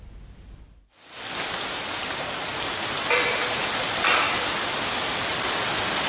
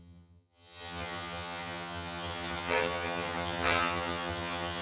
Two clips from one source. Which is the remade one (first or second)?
second